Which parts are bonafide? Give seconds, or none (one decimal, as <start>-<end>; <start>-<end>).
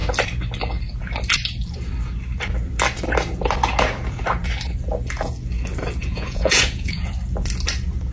0.0-6.0; 7.1-8.1